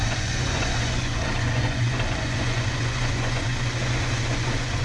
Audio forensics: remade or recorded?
remade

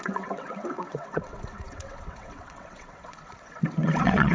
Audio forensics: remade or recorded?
remade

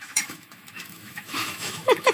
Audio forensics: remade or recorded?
remade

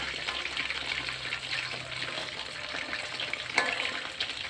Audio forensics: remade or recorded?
recorded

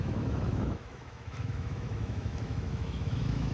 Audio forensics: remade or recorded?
remade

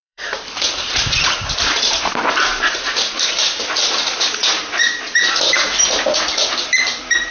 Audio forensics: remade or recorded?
remade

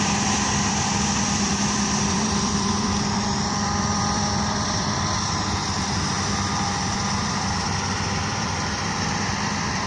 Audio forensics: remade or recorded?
remade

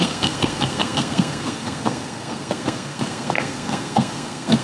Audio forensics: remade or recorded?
remade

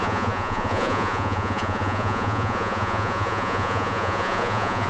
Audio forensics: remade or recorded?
remade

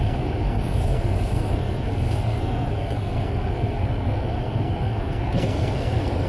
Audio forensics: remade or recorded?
remade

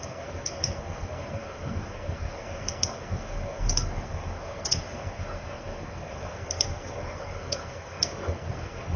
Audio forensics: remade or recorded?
remade